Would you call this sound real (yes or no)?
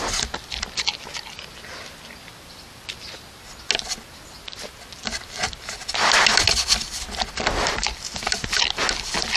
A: yes